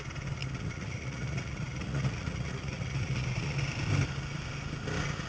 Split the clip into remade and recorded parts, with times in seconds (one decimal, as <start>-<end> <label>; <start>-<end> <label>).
0.0-0.4 recorded; 0.4-3.6 remade; 3.6-5.3 recorded

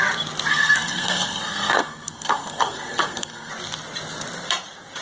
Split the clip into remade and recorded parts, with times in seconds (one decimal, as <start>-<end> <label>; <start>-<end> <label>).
0.0-0.5 recorded; 0.5-3.5 remade; 3.5-5.0 recorded

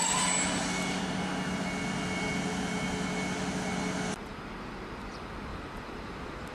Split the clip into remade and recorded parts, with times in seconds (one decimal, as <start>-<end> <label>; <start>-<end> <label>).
0.0-5.5 recorded; 5.5-6.1 remade; 6.1-6.5 recorded

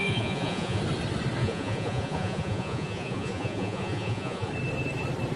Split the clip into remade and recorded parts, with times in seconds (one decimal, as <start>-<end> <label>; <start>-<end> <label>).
0.0-0.8 remade; 0.8-1.4 recorded; 1.4-4.5 remade; 4.5-5.4 recorded

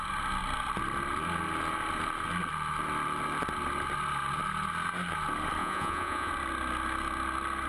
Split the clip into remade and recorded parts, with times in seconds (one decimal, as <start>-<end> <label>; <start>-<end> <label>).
0.0-5.6 recorded; 5.6-6.3 remade; 6.3-7.7 recorded

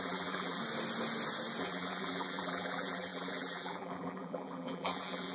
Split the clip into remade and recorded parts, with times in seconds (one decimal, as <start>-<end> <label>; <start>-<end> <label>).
0.0-0.6 remade; 0.6-1.6 recorded; 1.6-5.3 remade

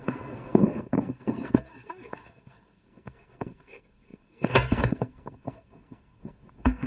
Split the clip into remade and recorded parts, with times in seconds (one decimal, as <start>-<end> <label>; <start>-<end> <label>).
0.0-6.9 remade

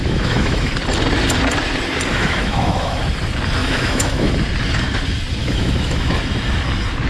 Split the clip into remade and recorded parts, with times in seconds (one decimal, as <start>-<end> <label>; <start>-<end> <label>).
0.0-0.7 remade; 0.7-2.1 recorded; 2.1-3.0 remade; 3.0-3.6 recorded; 3.6-4.3 remade; 4.3-5.4 recorded; 5.4-6.2 remade; 6.2-7.1 recorded